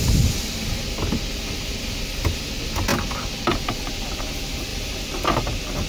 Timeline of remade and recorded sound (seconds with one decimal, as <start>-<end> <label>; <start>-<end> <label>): 0.0-4.7 recorded; 4.7-5.4 remade; 5.4-5.9 recorded